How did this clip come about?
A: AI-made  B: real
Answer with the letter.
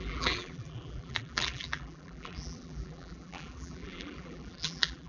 A